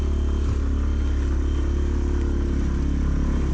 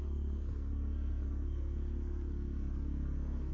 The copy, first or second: second